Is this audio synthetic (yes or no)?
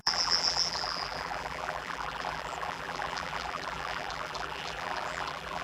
yes